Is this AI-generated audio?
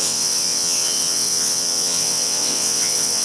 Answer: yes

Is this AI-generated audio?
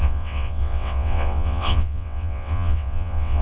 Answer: yes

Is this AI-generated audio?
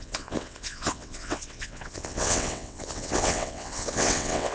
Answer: yes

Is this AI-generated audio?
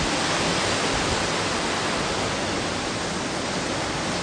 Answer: no